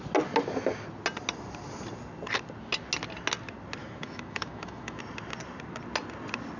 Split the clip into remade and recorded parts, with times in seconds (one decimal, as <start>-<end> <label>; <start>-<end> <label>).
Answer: 0.0-3.8 recorded; 3.8-5.0 remade; 5.0-6.6 recorded